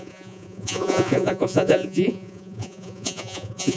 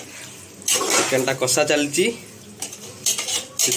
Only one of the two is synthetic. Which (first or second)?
first